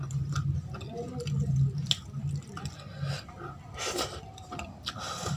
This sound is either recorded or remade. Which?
recorded